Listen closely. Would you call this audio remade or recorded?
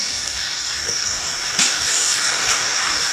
remade